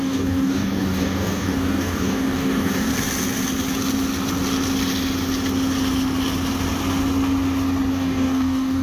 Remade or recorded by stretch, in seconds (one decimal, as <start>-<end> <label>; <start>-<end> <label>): 0.0-2.9 remade; 2.9-7.9 recorded; 7.9-8.8 remade

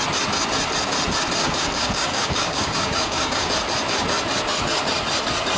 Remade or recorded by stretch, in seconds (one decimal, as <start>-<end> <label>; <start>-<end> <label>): 0.0-1.4 recorded; 1.4-3.5 remade; 3.5-5.6 recorded

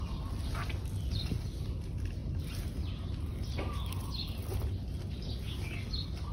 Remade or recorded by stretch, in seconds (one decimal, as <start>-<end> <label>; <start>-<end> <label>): 0.0-6.3 recorded